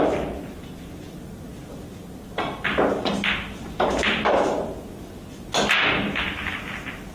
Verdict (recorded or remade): recorded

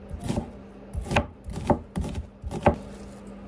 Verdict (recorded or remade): recorded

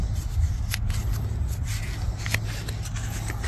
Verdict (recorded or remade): recorded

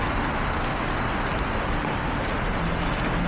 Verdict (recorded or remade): recorded